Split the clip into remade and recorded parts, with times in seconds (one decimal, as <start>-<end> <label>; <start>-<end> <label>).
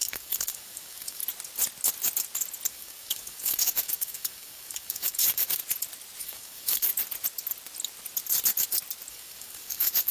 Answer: 0.0-1.2 remade; 1.2-2.7 recorded; 2.7-5.6 remade; 5.6-6.2 recorded; 6.2-6.9 remade; 6.9-9.1 recorded; 9.1-10.1 remade